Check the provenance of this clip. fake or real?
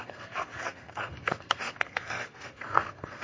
fake